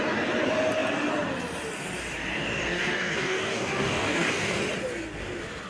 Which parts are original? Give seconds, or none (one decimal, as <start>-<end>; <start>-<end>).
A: 0.0-2.3; 4.6-5.7